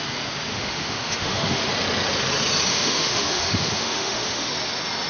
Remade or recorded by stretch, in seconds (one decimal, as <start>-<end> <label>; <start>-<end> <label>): 0.0-0.5 recorded; 0.5-1.6 remade; 1.6-2.7 recorded; 2.7-4.5 remade; 4.5-5.1 recorded